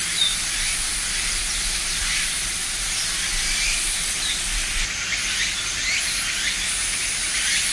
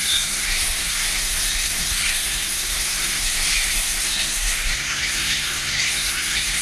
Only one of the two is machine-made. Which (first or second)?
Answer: second